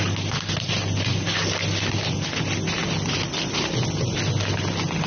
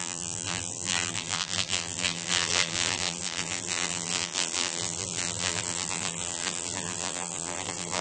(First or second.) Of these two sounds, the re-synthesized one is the second